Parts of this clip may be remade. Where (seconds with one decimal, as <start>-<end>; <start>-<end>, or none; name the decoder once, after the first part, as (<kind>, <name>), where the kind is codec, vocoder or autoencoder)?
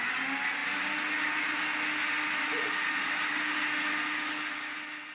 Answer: none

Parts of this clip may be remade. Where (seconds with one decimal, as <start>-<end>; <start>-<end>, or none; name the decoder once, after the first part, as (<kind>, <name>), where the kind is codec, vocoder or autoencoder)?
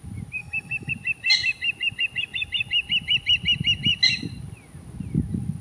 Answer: 0.4-0.9 (autoencoder, DAC-VAE)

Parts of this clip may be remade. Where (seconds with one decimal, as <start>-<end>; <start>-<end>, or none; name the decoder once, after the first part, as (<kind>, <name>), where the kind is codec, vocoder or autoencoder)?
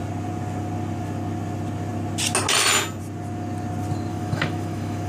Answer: 4.1-5.1 (autoencoder, DAC-VAE)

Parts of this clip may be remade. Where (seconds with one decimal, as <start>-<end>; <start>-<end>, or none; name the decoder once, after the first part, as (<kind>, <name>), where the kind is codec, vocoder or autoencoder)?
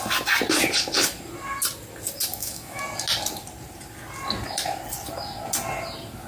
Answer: 2.3-2.8 (autoencoder, DAC-VAE)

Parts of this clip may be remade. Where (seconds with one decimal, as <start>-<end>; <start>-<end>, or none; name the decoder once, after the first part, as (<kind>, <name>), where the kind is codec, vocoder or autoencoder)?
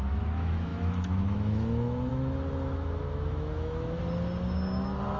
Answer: 0.0-4.0 (autoencoder, DAC-VAE)